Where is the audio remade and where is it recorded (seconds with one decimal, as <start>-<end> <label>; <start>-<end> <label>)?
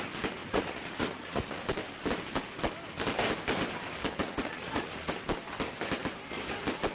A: 0.0-0.4 recorded; 0.4-1.6 remade; 1.6-4.2 recorded; 4.2-5.1 remade; 5.1-6.9 recorded